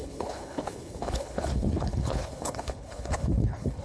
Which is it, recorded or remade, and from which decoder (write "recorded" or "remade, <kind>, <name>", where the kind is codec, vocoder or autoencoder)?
remade, codec, HILCodec